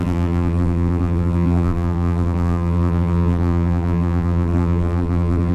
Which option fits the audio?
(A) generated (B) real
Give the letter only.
A